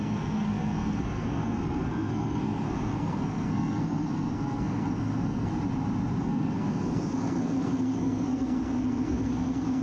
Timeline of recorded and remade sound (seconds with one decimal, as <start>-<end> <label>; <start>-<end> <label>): 0.0-5.5 remade; 5.5-6.2 recorded; 6.2-9.8 remade